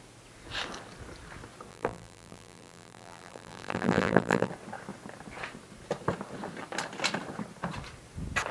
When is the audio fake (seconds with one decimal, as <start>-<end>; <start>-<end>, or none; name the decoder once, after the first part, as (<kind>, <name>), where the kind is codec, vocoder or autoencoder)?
1.7-4.5 (vocoder, BigVGAN v2)